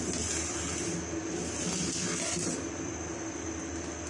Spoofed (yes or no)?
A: no